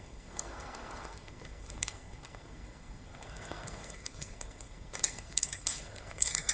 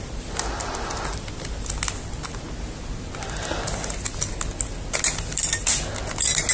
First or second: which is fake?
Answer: first